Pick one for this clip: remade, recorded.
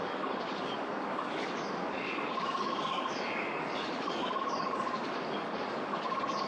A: remade